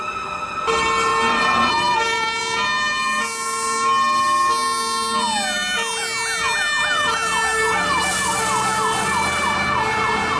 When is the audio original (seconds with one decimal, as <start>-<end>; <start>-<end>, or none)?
0.0-10.4